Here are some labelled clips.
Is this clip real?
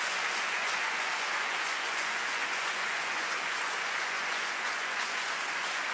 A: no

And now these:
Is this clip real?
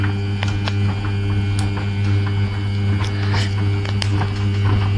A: yes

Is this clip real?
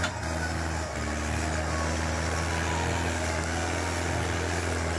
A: yes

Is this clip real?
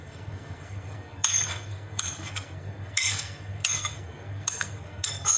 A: no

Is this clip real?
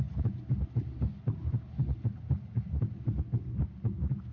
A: yes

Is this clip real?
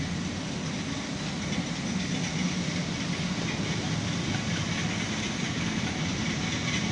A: yes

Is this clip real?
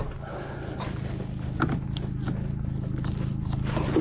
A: yes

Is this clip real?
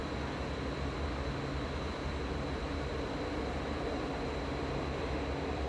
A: yes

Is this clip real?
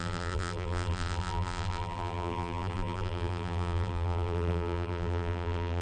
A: no